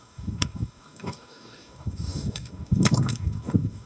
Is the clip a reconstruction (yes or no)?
yes